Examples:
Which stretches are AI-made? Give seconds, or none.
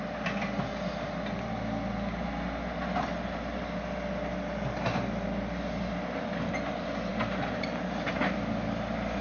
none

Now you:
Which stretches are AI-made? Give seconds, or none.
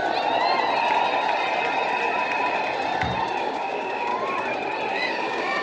3.4-4.1 (codec, DAC); 4.9-5.6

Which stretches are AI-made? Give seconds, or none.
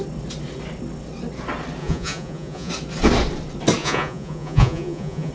1.8-2.7 (vocoder, Vocos); 3.8-5.3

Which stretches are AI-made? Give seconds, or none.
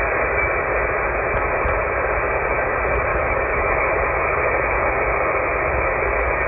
3.1-3.7 (autoencoder, DAC-VAE)